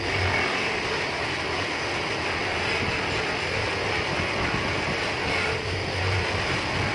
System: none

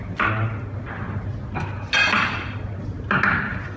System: none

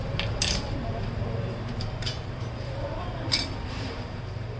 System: vocoder, BigVGAN v2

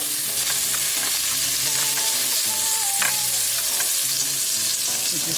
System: vocoder, BigVGAN v2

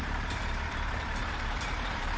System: vocoder, BigVGAN v2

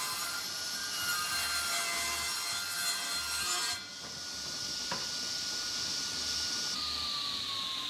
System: none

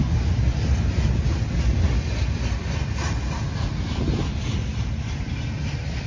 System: none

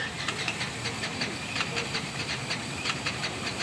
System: vocoder, BigVGAN v2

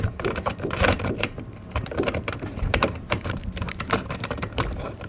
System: vocoder, BigVGAN v2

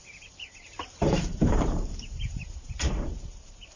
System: vocoder, BigVGAN v2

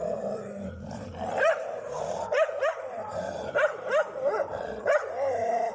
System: vocoder, BigVGAN v2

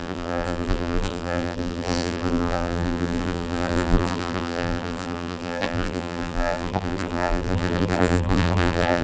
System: vocoder, BigVGAN v2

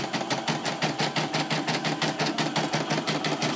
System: none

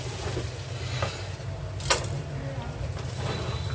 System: none